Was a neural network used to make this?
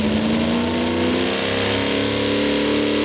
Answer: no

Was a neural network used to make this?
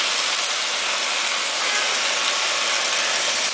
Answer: no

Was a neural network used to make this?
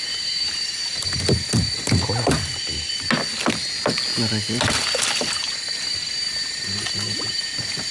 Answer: no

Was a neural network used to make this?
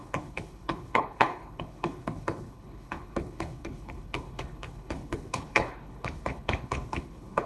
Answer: yes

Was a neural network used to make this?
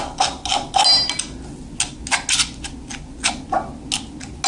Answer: no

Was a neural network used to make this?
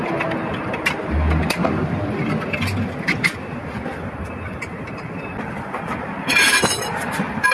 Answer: no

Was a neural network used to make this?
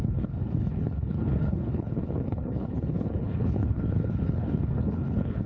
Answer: yes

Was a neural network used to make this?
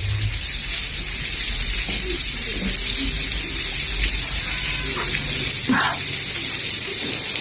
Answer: no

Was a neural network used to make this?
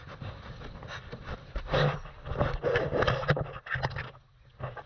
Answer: no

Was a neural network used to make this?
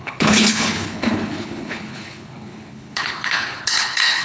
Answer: yes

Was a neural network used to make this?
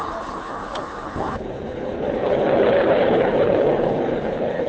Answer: yes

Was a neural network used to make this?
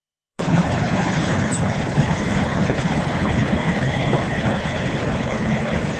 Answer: yes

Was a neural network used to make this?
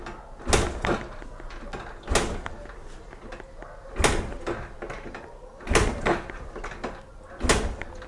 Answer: no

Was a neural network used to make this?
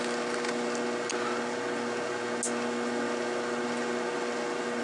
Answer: no